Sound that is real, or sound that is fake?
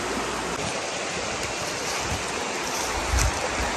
real